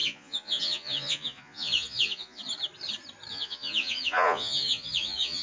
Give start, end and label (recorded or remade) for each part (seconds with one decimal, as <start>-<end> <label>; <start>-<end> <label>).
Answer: 0.0-2.4 remade; 2.4-3.3 recorded; 3.3-5.4 remade